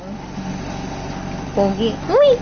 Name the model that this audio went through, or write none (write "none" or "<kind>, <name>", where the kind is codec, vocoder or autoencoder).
none